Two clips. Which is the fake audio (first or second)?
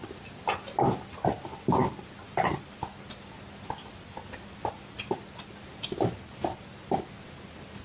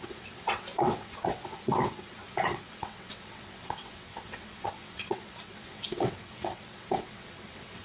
second